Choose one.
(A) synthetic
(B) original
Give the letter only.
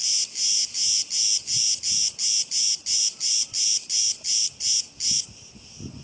B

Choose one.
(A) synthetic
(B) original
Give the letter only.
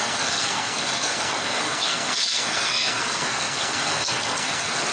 A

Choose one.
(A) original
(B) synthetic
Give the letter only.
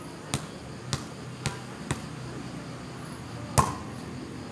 A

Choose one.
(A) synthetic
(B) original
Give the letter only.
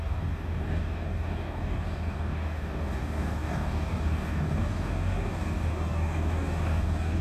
A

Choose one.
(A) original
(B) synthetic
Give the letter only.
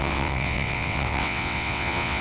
B